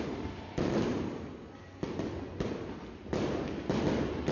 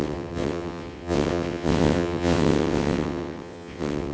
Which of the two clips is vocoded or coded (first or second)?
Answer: second